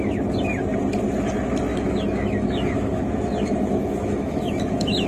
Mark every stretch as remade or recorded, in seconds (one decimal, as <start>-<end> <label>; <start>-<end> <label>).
0.0-1.7 recorded; 1.7-5.1 remade